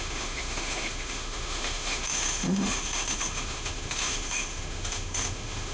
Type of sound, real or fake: fake